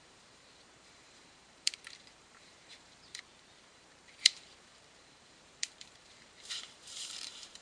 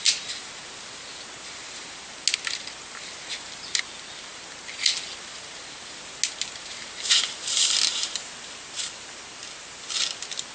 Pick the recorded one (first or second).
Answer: second